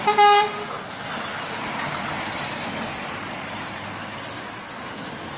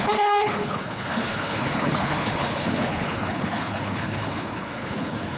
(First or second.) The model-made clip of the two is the second